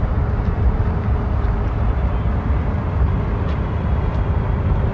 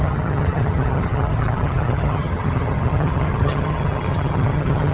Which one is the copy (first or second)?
second